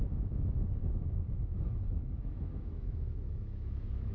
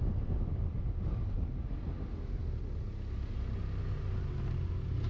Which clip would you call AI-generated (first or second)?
first